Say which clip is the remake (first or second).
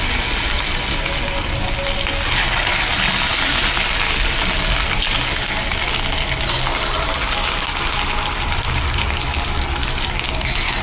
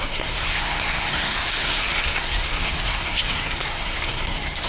second